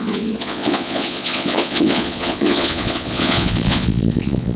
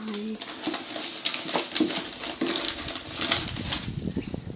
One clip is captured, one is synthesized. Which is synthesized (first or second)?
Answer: first